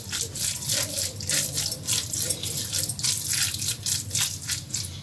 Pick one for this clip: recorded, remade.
recorded